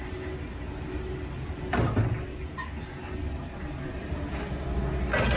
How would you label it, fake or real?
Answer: real